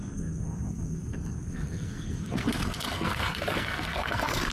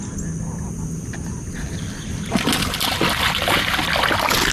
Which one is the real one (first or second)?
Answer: second